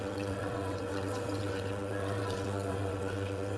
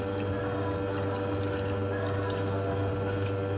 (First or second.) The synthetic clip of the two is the first